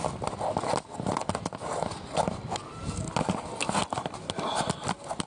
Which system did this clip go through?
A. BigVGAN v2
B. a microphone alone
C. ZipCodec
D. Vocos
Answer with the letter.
B